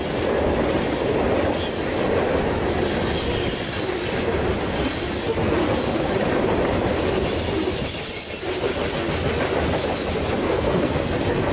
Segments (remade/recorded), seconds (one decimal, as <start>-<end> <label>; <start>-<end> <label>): 0.0-10.4 recorded; 10.4-11.1 remade; 11.1-11.5 recorded